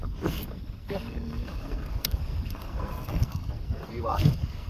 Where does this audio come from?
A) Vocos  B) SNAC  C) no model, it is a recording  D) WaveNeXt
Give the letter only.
B